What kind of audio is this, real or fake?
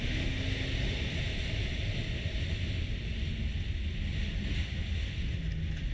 real